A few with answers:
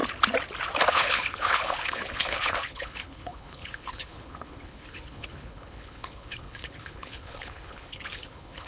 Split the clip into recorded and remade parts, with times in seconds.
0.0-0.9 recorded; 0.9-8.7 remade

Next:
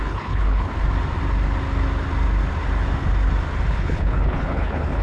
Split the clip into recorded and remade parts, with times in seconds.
0.0-0.7 remade; 0.7-3.7 recorded; 3.7-5.0 remade

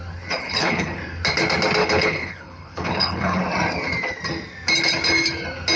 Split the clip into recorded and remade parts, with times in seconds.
0.0-0.4 recorded; 0.4-1.0 remade; 1.0-1.8 recorded; 1.8-3.4 remade; 3.4-5.8 recorded

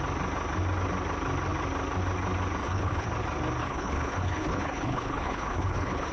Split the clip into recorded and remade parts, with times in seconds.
0.0-2.6 recorded; 2.6-3.1 remade; 3.1-3.6 recorded; 3.6-6.1 remade